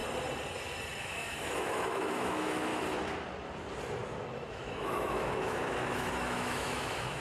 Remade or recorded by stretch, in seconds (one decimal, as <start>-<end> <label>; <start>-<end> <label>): 0.0-1.0 recorded; 1.0-2.7 remade; 2.7-4.5 recorded; 4.5-7.2 remade